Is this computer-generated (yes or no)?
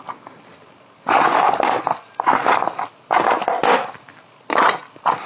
no